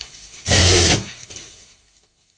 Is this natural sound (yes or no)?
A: no